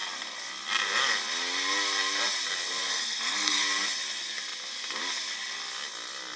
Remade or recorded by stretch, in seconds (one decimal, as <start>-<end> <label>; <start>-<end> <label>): 0.0-2.9 recorded; 2.9-3.6 remade; 3.6-6.4 recorded